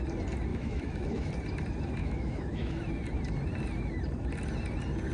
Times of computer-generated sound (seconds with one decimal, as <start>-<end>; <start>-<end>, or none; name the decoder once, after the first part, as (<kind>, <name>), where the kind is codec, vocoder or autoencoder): 0.5-1.3 (autoencoder, DAC-VAE); 2.0-2.8

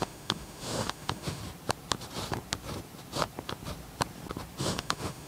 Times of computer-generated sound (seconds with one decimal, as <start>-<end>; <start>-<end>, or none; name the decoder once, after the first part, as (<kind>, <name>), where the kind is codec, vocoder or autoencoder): 0.0-1.4 (autoencoder, DAC-VAE); 4.6-5.3